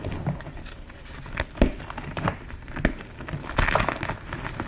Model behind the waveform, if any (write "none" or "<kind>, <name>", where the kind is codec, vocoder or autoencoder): none